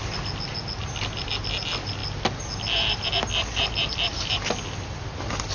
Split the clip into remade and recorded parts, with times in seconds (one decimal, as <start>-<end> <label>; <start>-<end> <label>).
0.0-5.5 recorded